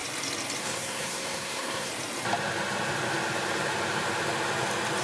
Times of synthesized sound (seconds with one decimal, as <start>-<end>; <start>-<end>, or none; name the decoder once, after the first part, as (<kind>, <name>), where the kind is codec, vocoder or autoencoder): 0.6-1.9 (codec, SNAC)